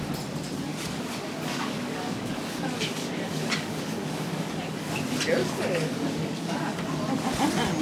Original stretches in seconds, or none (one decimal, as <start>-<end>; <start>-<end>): 0.0-0.7; 4.9-5.4; 7.0-7.8